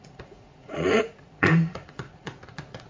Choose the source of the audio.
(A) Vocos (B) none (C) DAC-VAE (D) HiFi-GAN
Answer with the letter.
A